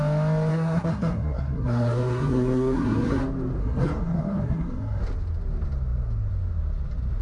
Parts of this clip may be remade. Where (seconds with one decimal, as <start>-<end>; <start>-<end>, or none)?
0.5-3.2; 3.6-5.0